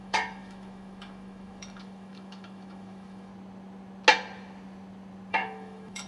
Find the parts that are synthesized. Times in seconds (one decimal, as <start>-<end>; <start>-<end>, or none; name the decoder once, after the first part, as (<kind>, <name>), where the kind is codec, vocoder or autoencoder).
0.0-3.3 (autoencoder, DAC-VAE); 5.3-6.1

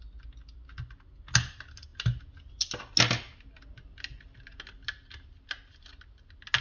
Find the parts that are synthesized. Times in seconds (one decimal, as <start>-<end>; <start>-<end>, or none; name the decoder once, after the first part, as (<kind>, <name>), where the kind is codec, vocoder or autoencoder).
none

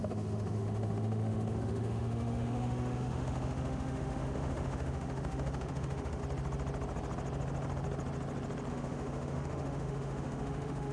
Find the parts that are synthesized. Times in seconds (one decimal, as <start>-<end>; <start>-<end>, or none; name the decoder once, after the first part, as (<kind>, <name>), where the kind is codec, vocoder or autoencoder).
0.0-6.2 (autoencoder, DAC-VAE); 8.7-10.9

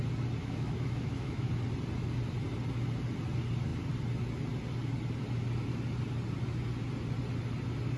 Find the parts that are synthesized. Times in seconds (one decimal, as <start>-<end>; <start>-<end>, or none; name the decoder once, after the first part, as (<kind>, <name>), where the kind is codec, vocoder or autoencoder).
0.4-1.5 (autoencoder, DAC-VAE)